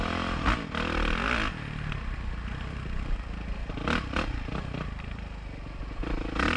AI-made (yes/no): no